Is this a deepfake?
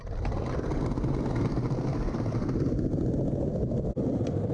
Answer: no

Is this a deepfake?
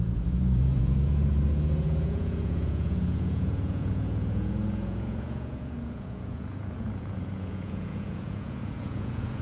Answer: yes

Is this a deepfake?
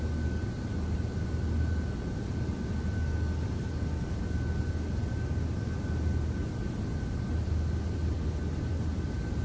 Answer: no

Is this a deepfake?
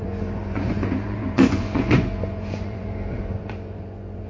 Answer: yes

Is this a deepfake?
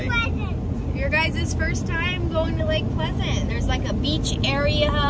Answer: no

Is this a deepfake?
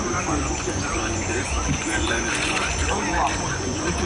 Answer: yes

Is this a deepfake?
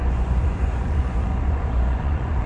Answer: yes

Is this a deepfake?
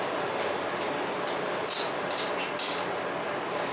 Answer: no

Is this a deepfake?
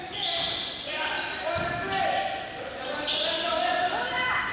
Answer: no